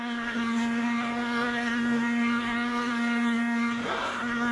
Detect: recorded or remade remade